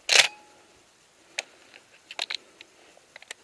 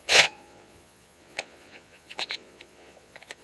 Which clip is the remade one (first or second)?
second